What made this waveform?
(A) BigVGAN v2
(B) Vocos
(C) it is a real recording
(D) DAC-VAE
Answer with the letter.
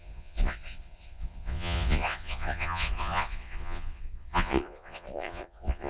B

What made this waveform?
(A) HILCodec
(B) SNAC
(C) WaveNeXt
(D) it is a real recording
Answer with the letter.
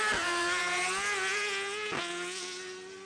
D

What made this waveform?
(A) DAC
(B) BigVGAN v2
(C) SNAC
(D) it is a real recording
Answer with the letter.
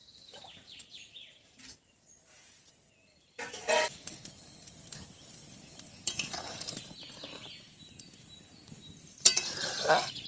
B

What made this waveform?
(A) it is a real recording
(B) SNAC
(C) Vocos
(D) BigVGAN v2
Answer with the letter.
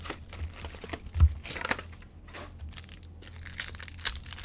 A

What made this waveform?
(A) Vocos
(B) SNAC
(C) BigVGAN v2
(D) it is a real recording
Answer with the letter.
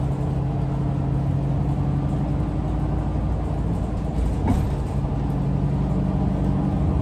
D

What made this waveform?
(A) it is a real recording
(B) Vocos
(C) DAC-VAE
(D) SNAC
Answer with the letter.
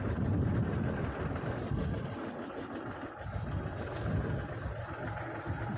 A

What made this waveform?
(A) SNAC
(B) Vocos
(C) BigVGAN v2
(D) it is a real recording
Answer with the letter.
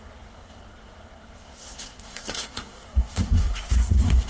A